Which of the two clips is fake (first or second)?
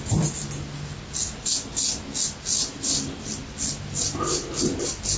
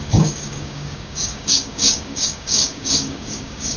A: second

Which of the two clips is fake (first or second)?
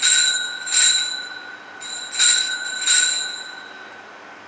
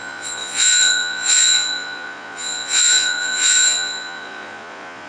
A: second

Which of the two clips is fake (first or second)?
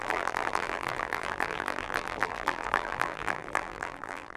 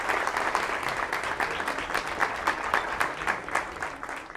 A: first